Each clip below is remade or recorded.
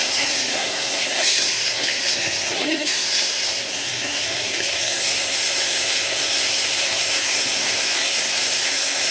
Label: remade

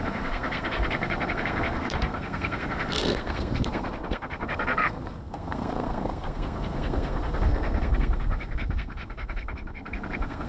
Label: remade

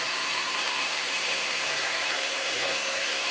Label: remade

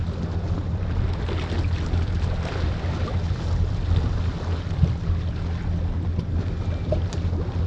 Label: recorded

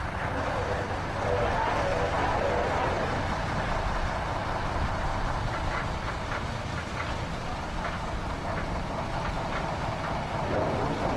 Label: recorded